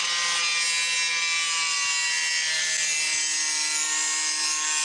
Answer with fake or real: real